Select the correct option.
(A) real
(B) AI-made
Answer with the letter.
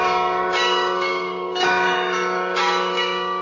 B